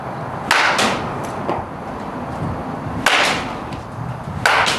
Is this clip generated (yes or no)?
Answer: no